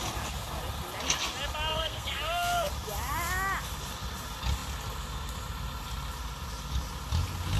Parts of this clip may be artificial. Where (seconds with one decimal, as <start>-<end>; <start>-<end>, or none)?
1.7-2.7